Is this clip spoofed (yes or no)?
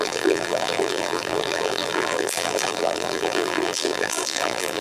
yes